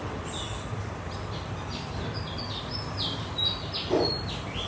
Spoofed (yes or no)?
no